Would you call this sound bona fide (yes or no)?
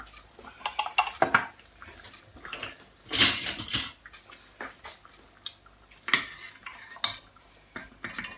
yes